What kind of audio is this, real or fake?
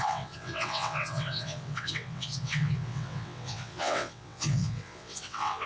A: fake